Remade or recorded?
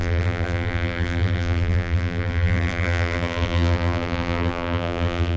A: remade